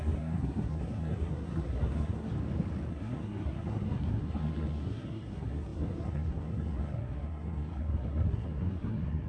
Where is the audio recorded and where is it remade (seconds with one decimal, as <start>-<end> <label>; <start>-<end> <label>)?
0.0-2.3 remade; 2.3-2.9 recorded; 2.9-9.3 remade